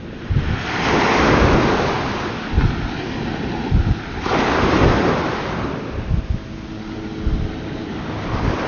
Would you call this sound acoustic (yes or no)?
yes